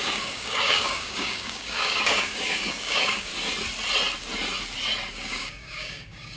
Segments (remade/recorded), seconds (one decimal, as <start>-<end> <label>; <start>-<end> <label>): 0.0-3.3 remade; 3.3-5.1 recorded; 5.1-6.4 remade